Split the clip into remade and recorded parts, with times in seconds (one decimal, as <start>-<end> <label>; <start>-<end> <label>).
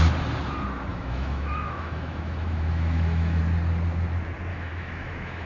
0.0-0.9 recorded; 0.9-3.4 remade; 3.4-4.5 recorded; 4.5-5.5 remade